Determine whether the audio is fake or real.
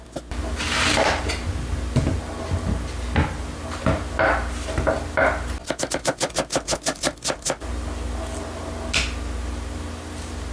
real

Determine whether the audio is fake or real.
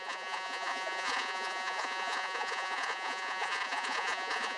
fake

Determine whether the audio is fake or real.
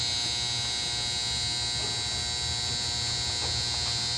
real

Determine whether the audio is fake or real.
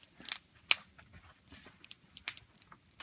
real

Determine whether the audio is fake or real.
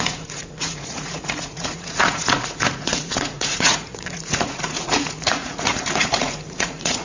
fake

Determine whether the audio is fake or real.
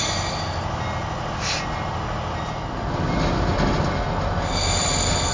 real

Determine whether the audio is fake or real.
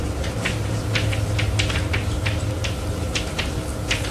real